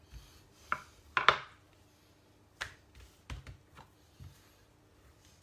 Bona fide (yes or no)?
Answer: yes